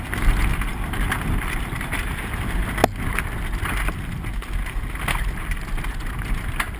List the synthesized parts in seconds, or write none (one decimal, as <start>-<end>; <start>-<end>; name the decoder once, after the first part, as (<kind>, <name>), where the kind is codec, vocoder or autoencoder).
0.7-2.2 (vocoder, BigVGAN v2)